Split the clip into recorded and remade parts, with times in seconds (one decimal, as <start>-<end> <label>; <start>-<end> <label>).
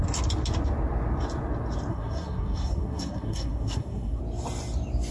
0.0-1.9 recorded; 1.9-4.2 remade; 4.2-5.1 recorded